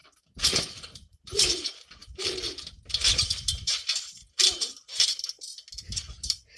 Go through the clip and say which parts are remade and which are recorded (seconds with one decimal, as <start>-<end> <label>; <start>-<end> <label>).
0.0-2.0 remade; 2.0-2.7 recorded; 2.7-6.6 remade